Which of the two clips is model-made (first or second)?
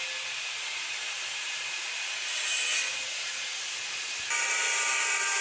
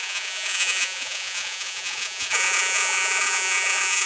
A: second